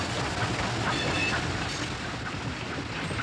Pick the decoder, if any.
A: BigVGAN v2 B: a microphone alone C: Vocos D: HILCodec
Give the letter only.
B